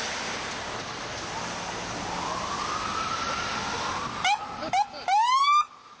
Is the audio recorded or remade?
recorded